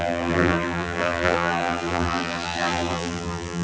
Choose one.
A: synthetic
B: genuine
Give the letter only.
A